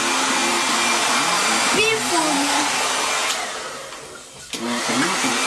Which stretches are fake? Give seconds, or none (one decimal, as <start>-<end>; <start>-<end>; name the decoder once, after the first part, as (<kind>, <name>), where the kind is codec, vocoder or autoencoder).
none